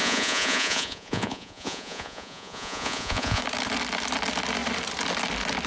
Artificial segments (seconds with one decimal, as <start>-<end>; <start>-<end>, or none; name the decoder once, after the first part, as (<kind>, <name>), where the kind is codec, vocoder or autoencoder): 0.0-3.4 (vocoder, Vocos)

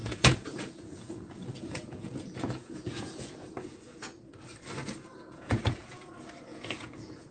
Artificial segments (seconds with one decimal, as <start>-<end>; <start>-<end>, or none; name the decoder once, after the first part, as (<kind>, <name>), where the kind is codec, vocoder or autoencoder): 0.0-3.5 (vocoder, Vocos); 4.8-6.1; 6.5-7.3

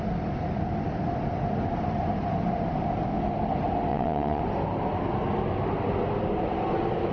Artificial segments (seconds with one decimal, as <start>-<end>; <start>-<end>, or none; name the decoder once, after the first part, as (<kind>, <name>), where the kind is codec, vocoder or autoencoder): 3.9-4.4 (vocoder, Vocos)

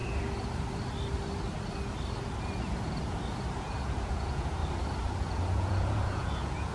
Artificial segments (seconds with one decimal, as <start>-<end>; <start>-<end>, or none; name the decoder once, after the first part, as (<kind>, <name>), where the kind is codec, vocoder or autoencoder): 3.6-4.6 (vocoder, Vocos); 5.1-6.7

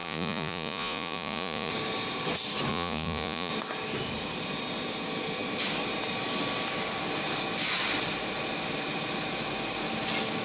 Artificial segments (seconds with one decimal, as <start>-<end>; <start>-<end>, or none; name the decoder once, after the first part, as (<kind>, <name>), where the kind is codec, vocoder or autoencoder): 0.0-1.7 (vocoder, Vocos); 2.7-3.5

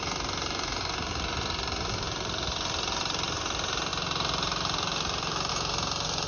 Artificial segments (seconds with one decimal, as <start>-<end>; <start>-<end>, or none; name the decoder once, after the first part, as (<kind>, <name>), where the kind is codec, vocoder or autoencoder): none

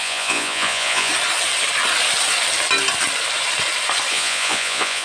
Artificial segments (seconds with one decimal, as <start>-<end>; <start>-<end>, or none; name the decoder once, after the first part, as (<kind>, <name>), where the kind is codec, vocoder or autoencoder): 0.0-1.1 (vocoder, Vocos); 4.1-5.0

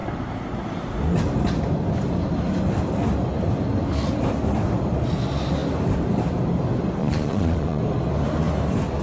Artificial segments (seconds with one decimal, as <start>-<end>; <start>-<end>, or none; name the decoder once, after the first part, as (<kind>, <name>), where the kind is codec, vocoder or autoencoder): 7.0-7.8 (vocoder, Vocos)